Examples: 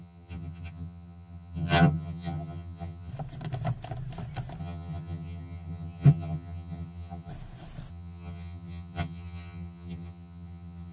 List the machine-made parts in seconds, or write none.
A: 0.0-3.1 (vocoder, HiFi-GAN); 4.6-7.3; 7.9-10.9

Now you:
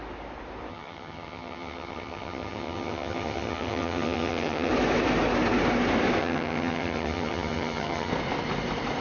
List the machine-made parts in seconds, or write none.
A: 0.7-4.7 (vocoder, HiFi-GAN); 6.2-8.1

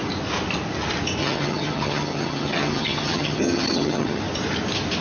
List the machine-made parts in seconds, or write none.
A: 1.2-4.2 (vocoder, HiFi-GAN)

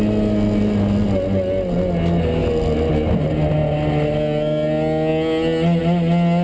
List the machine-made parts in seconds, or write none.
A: none

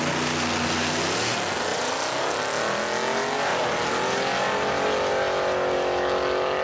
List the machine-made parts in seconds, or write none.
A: none

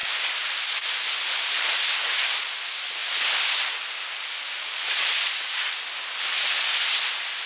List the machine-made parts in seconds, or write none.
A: none